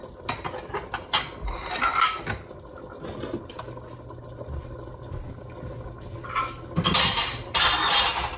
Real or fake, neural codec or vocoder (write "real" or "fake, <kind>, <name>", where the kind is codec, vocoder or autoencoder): real